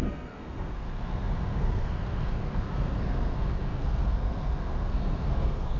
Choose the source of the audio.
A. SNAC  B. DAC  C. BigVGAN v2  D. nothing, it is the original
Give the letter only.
A